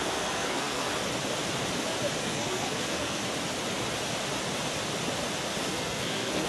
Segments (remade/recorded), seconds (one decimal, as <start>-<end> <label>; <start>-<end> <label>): 0.0-0.9 remade; 0.9-2.2 recorded; 2.2-3.2 remade; 3.2-5.7 recorded; 5.7-6.5 remade